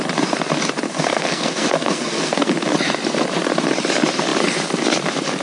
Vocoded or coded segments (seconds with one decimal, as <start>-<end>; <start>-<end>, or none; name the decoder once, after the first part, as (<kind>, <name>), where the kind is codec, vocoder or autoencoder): 0.9-2.5 (codec, SNAC)